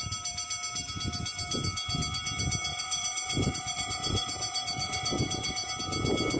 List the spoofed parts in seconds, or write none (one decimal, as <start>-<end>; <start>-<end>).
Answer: 2.7-5.7